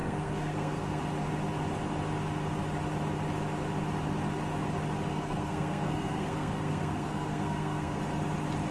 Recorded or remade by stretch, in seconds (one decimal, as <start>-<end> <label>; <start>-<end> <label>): 0.0-1.0 remade; 1.0-5.1 recorded; 5.1-8.0 remade; 8.0-8.7 recorded